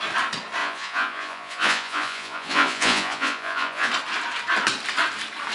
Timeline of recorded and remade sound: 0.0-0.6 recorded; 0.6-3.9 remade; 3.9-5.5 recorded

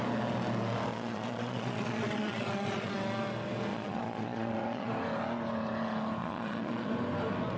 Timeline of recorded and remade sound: 0.0-0.9 recorded; 0.9-2.9 remade; 2.9-3.7 recorded; 3.7-4.9 remade; 4.9-6.2 recorded; 6.2-6.9 remade; 6.9-7.6 recorded

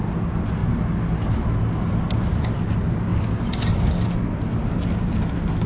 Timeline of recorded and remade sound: 0.0-5.7 recorded